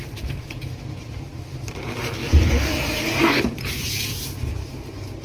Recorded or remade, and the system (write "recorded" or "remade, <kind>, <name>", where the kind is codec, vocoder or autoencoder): remade, vocoder, BigVGAN v2